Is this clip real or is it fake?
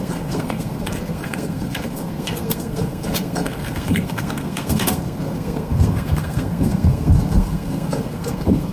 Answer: fake